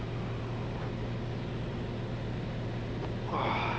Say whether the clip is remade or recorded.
recorded